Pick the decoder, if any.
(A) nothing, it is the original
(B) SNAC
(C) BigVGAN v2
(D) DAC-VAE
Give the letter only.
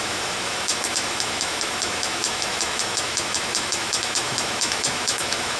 D